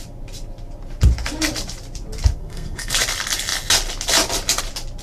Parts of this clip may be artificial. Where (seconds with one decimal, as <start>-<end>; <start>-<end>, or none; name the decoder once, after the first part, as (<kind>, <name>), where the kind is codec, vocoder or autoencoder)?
2.4-2.9 (codec, SNAC)